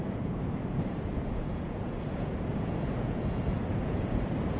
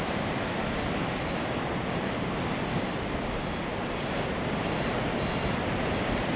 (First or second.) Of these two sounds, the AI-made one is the first